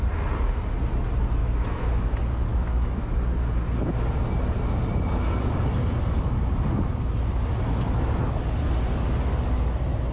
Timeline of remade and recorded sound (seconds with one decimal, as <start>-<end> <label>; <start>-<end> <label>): 0.0-1.4 recorded; 1.4-2.1 remade; 2.1-2.5 recorded; 2.5-3.1 remade; 3.1-10.1 recorded